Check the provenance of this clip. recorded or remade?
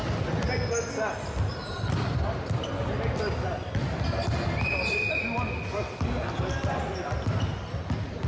recorded